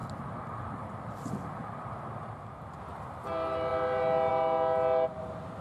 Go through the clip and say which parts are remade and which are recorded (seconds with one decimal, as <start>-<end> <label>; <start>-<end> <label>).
0.0-2.8 remade; 2.8-5.6 recorded

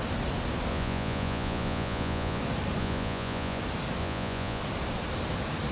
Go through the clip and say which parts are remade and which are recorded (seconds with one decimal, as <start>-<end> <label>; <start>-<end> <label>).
0.0-0.7 recorded; 0.7-2.4 remade; 2.4-2.8 recorded; 2.8-3.6 remade; 3.6-4.0 recorded; 4.0-4.6 remade; 4.6-5.7 recorded

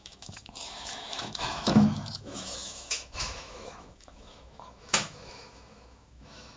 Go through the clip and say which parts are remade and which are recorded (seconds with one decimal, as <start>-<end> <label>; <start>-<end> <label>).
0.0-6.6 remade

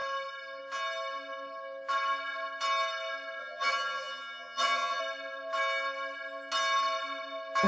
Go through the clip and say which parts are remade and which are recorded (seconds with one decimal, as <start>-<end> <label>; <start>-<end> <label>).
0.0-3.4 recorded; 3.4-5.0 remade; 5.0-7.7 recorded

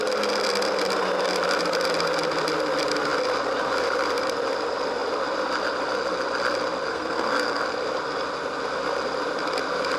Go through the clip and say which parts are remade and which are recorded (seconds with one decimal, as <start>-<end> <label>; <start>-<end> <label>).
0.0-6.9 recorded; 6.9-7.6 remade; 7.6-10.0 recorded

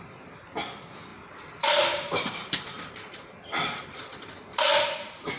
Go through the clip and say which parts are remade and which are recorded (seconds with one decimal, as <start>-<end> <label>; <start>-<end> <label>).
0.0-1.1 recorded; 1.1-4.3 remade; 4.3-5.4 recorded